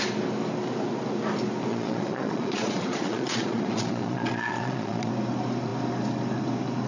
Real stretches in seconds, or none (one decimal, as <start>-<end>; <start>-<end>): 0.0-1.7; 5.1-6.9